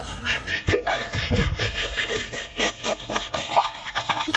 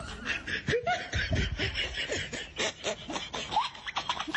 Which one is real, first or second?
second